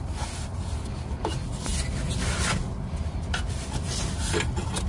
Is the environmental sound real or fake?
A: real